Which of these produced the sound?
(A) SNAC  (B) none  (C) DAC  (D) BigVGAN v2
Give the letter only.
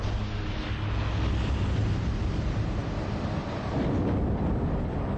B